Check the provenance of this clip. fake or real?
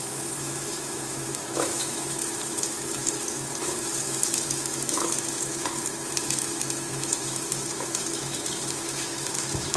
fake